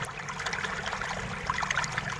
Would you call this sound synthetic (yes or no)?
yes